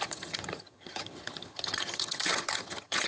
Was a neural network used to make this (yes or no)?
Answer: yes